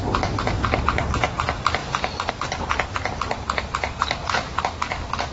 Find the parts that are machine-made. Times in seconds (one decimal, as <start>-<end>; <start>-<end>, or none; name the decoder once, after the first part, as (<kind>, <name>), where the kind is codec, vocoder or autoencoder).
1.8-2.3 (vocoder, BigVGAN v2)